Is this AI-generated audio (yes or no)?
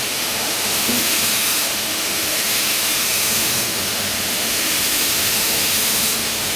yes